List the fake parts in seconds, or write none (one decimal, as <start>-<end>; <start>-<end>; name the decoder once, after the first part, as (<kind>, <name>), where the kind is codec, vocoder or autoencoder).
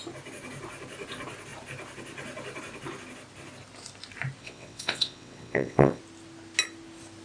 4.4-6.0 (vocoder, WaveNeXt)